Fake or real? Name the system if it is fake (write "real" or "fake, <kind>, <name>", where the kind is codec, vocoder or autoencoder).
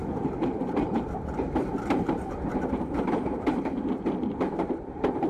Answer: fake, vocoder, BigVGAN v2